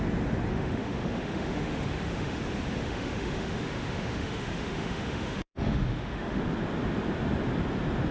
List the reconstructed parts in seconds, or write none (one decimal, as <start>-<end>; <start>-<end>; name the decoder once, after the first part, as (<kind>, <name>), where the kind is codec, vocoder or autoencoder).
0.5-2.4 (autoencoder, DAC-VAE); 2.8-6.4